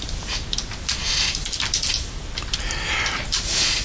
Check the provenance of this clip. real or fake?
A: real